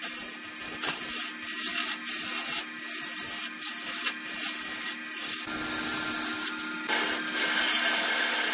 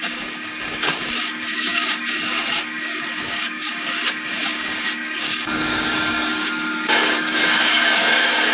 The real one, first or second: first